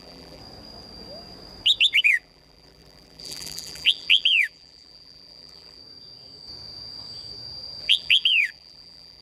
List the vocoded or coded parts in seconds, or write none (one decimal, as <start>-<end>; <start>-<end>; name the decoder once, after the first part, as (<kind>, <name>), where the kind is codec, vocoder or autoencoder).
0.0-0.4 (vocoder, BigVGAN v2); 2.0-5.8; 7.8-9.2